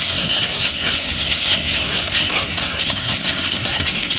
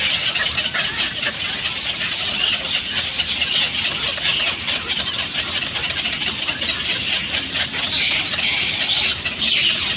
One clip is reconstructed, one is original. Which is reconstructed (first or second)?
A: first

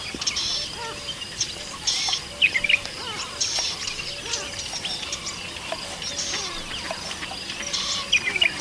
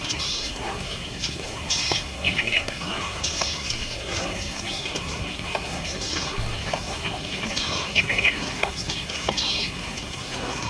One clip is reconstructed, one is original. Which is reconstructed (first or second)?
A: second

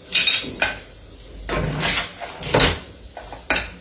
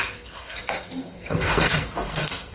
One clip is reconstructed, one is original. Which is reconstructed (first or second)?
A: second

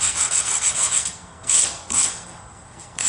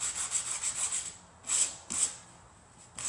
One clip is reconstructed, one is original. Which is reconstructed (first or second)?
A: first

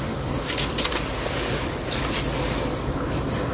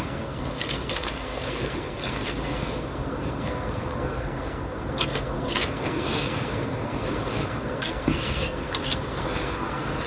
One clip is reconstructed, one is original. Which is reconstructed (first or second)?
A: second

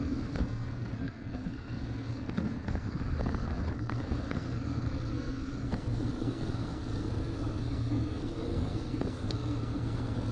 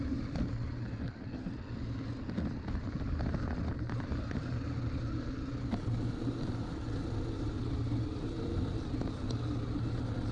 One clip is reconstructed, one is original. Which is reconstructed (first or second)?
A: first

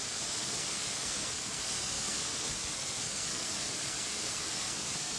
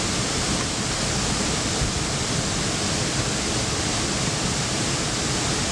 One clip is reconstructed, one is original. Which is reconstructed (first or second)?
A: first